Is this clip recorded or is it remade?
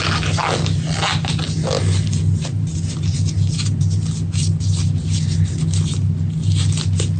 recorded